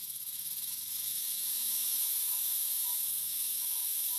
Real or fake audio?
fake